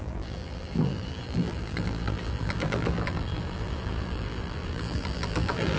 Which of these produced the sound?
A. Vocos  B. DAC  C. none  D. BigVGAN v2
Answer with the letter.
D